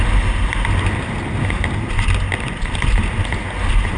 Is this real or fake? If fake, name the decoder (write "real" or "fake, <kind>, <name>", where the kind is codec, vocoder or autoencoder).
real